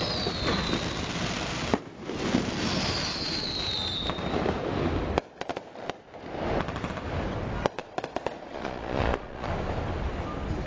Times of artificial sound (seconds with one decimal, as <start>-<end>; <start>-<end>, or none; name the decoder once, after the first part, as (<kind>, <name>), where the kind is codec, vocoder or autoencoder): 7.8-9.5 (vocoder, Vocos)